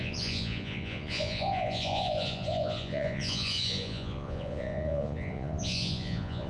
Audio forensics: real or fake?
fake